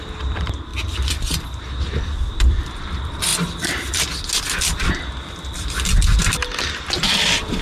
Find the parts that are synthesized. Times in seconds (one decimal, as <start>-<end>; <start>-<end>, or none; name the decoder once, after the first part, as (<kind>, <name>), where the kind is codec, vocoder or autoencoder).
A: none